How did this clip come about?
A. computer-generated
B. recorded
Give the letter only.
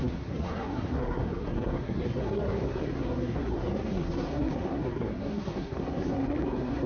A